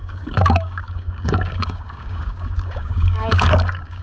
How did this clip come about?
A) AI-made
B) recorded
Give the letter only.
A